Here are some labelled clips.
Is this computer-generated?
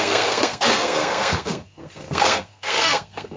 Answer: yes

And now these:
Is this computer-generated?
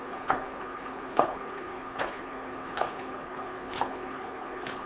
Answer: yes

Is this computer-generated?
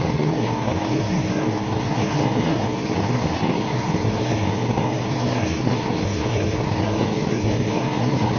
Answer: yes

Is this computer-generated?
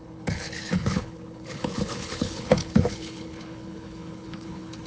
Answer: yes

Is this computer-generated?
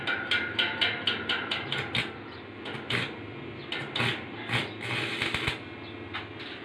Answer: no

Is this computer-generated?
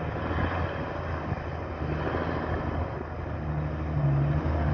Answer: no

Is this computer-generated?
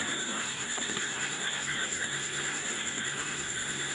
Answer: yes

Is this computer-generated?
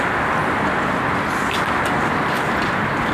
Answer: no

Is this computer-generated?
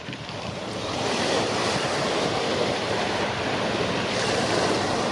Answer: yes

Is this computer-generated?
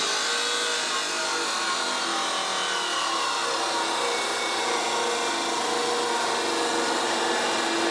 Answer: no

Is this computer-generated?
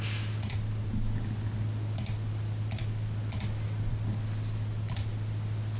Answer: no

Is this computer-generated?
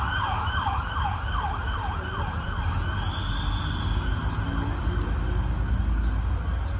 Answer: no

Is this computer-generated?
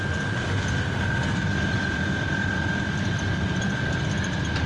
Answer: no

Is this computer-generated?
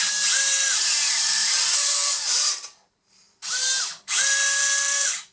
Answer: yes